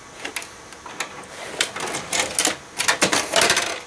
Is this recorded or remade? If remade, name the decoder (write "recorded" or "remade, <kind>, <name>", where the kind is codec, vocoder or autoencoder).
recorded